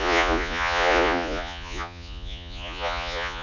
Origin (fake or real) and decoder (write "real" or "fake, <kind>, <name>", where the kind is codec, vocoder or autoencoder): fake, vocoder, Vocos